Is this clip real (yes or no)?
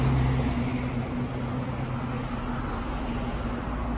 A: yes